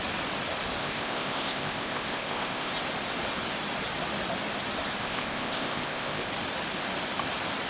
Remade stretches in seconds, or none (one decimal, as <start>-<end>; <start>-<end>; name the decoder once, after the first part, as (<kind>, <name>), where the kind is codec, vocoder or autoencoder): 0.8-2.7 (codec, ZipCodec); 5.0-6.3